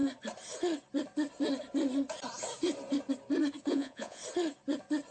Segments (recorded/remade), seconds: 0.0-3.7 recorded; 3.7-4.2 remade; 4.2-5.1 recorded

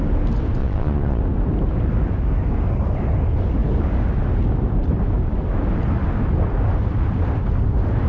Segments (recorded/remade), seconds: 0.0-0.6 recorded; 0.6-1.2 remade; 1.2-8.1 recorded

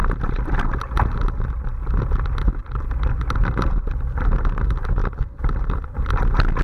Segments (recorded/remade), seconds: 0.0-2.6 recorded; 2.6-3.2 remade; 3.2-5.0 recorded; 5.0-6.6 remade

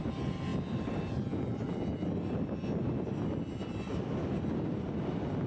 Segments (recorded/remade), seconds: 0.0-5.5 recorded

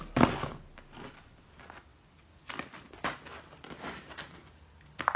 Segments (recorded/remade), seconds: 0.0-5.2 recorded

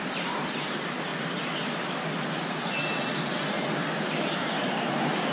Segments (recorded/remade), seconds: 0.0-1.1 remade; 1.1-4.0 recorded; 4.0-5.3 remade

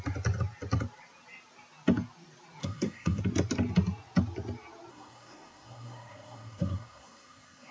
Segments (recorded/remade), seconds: 0.0-2.6 recorded; 2.6-3.2 remade; 3.2-4.9 recorded; 4.9-7.7 remade

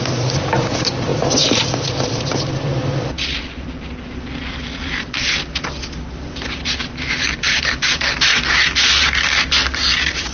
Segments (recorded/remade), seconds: 0.0-8.3 remade; 8.3-9.9 recorded; 9.9-10.3 remade